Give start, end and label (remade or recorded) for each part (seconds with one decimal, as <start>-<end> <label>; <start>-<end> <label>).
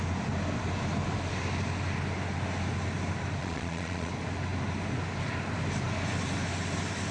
0.0-3.4 recorded; 3.4-4.1 remade; 4.1-7.1 recorded